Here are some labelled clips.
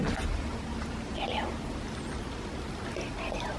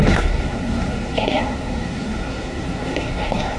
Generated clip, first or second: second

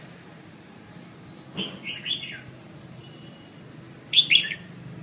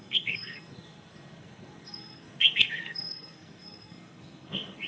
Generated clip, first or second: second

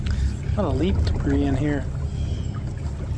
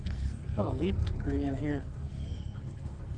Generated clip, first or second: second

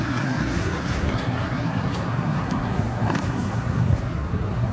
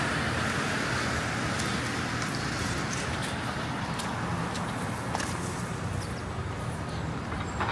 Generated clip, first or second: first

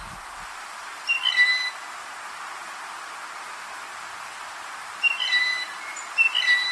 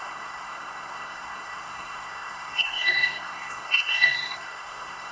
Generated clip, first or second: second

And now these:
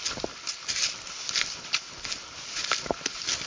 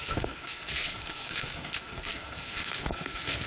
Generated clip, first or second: second